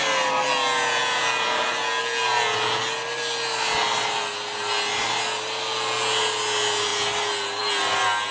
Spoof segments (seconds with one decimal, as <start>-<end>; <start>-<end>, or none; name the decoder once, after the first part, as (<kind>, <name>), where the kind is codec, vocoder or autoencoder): none

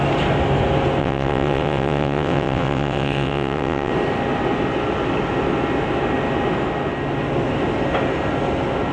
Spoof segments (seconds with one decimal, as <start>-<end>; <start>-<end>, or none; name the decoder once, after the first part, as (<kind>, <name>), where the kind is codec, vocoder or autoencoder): 1.0-3.9 (vocoder, WaveNeXt)

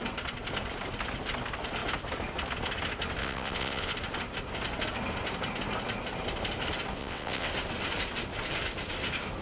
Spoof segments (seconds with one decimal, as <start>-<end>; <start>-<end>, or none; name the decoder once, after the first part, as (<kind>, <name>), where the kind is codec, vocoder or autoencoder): 3.2-3.9 (vocoder, WaveNeXt); 7.0-7.5

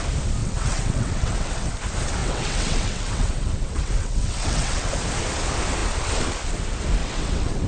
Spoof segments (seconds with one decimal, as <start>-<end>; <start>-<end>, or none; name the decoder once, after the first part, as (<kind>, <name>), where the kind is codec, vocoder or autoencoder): 0.4-1.7 (vocoder, WaveNeXt); 2.2-4.9; 7.0-7.7